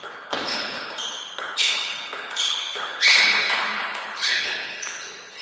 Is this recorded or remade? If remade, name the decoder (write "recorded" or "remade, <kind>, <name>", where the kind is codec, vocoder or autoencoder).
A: remade, codec, HILCodec